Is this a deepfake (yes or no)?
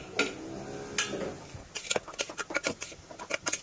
no